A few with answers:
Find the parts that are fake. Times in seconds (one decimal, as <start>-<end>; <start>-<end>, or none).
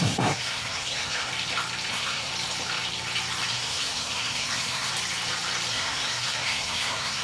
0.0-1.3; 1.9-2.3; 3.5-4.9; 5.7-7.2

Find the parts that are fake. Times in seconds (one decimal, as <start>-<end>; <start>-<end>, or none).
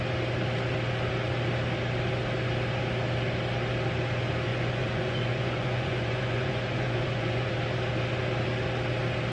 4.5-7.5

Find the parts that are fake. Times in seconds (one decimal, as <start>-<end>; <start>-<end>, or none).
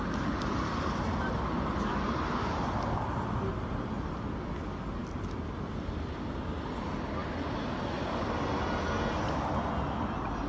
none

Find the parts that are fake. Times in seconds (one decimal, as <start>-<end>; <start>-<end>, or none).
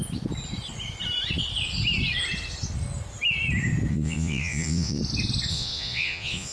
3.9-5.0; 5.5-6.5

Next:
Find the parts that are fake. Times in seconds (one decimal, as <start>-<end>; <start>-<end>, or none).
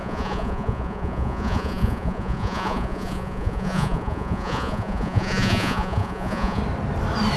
0.0-6.6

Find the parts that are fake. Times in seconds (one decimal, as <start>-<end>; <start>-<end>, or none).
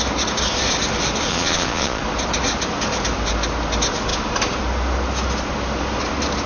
1.3-2.0